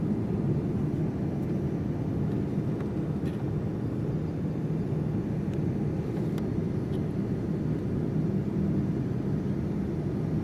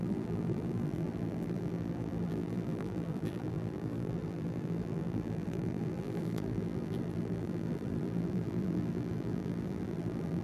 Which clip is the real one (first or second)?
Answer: first